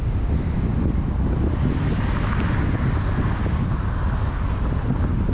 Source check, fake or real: real